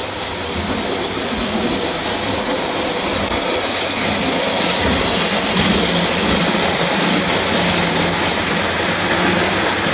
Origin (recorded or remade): recorded